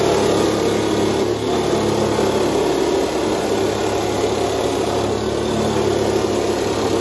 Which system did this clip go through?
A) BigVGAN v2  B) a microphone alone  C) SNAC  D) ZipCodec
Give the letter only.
B